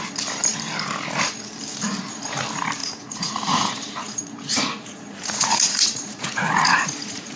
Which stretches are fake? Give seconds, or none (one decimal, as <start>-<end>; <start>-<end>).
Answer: 2.8-7.4